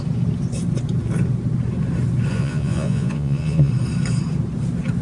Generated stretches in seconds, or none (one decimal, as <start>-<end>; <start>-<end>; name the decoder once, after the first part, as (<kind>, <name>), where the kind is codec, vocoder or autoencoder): 2.3-3.7 (vocoder, Vocos)